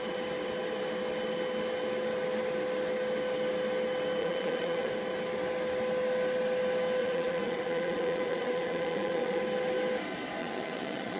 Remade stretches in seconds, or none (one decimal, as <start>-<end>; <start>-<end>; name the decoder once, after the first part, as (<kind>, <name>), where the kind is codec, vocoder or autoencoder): 4.2-4.9 (vocoder, Vocos); 7.0-9.4; 10.4-11.2